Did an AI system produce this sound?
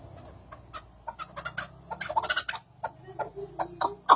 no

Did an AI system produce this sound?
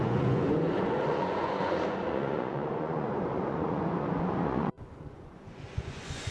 yes